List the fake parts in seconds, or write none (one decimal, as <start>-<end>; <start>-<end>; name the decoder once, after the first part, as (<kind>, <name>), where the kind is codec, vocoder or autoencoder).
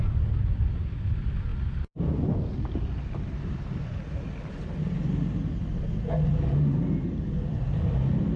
none